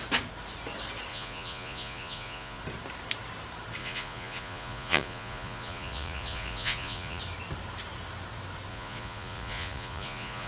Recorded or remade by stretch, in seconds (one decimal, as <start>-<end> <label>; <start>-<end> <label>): 0.0-1.1 recorded; 1.1-2.6 remade; 2.6-3.8 recorded; 3.8-7.2 remade; 7.2-8.7 recorded; 8.7-10.5 remade